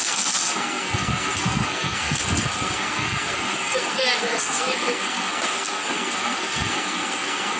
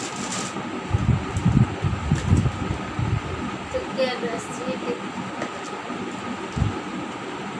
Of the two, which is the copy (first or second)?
first